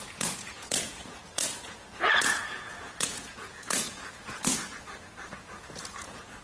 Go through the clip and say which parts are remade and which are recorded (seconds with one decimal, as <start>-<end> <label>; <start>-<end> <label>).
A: 0.0-6.4 remade